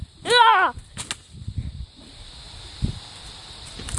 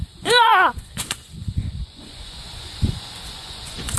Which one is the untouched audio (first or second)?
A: first